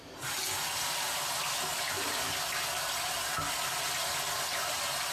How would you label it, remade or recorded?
recorded